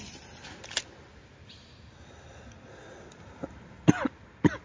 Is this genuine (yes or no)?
yes